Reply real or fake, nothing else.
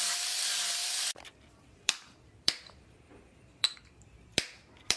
fake